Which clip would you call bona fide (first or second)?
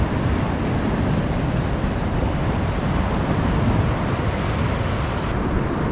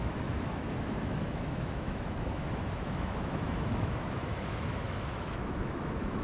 first